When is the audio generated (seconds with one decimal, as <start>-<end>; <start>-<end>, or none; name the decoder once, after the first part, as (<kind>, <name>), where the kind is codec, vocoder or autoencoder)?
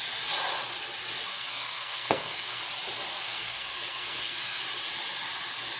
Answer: 1.3-2.6 (codec, SNAC); 3.1-4.6